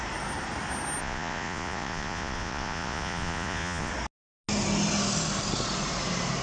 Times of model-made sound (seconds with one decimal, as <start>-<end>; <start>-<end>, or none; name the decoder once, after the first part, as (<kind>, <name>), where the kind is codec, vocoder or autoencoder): 1.0-3.9 (vocoder, Vocos)